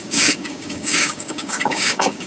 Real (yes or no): no